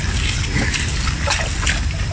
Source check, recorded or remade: recorded